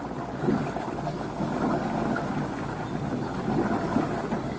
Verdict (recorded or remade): recorded